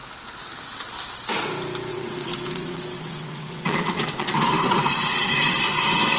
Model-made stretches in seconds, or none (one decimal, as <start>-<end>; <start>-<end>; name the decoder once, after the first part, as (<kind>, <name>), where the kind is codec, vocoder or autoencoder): 1.9-5.6 (vocoder, WaveNeXt)